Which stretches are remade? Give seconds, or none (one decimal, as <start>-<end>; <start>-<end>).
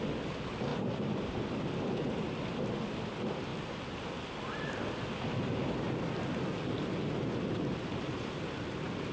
none